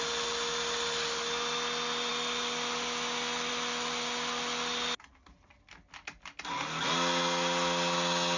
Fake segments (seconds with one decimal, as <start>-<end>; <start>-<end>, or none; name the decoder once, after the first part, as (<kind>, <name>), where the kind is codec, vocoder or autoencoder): none